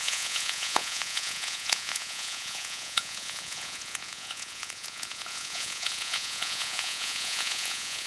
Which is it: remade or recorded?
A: remade